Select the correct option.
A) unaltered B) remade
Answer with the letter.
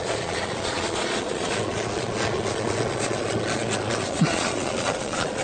B